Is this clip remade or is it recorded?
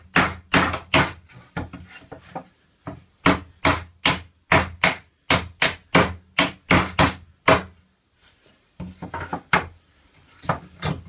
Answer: recorded